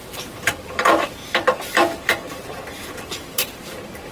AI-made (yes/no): yes